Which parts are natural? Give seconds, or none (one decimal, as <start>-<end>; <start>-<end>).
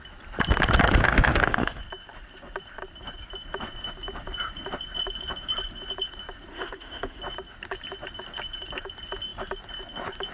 0.0-1.0; 1.8-6.5; 7.2-10.3